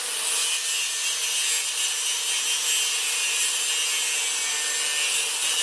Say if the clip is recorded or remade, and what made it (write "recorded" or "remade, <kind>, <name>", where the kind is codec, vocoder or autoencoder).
recorded